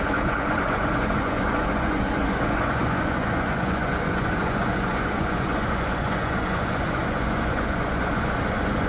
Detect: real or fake fake